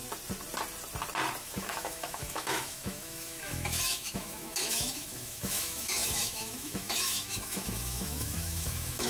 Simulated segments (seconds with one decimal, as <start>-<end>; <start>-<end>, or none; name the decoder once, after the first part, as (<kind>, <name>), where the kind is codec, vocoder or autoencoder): 1.4-9.1 (autoencoder, DAC-VAE)